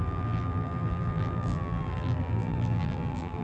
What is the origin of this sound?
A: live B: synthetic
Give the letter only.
B